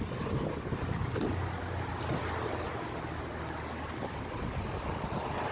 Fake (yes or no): no